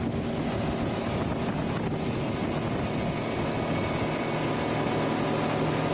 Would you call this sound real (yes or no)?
yes